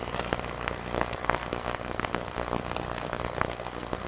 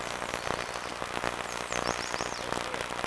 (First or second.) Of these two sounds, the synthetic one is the first